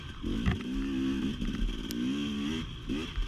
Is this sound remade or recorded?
recorded